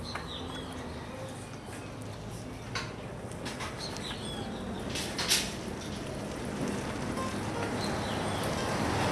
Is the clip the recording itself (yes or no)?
yes